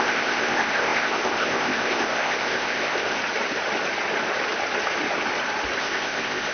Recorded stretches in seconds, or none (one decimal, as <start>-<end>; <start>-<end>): 3.2-5.8